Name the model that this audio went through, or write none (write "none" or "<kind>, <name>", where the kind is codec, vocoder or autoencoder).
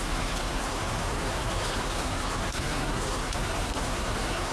codec, SNAC